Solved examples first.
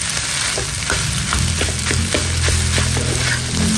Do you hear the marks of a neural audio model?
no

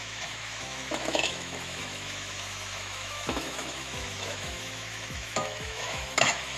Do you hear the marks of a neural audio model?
yes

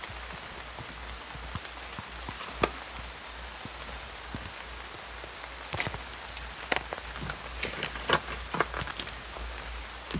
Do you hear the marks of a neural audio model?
no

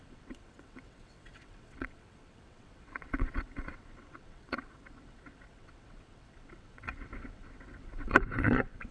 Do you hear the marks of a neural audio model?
yes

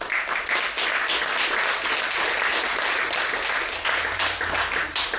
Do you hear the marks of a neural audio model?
no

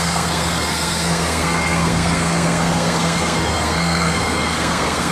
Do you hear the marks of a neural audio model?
yes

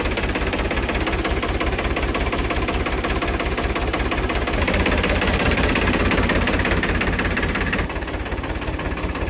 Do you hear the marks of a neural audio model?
no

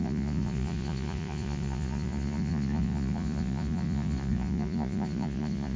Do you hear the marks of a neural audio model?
yes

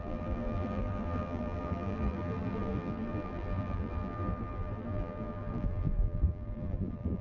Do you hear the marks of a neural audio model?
yes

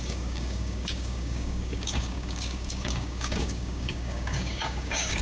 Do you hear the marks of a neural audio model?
yes